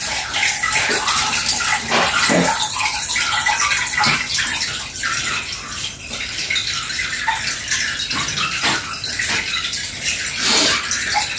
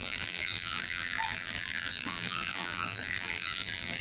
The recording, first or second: first